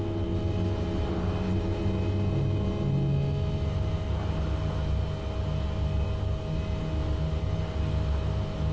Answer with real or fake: real